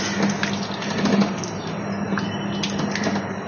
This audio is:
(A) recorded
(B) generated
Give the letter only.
A